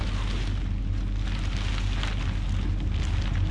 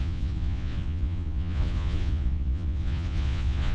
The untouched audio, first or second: first